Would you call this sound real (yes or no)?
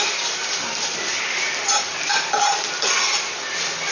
no